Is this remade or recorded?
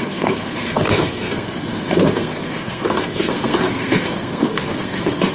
remade